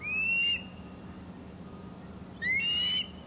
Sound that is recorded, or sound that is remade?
recorded